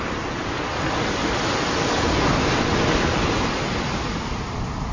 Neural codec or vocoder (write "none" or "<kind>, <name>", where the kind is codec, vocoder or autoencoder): none